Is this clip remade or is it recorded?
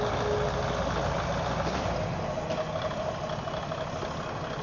recorded